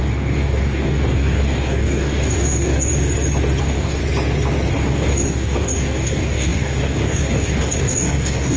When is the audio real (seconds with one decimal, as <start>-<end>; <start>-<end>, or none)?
2.9-3.6; 4.0-4.7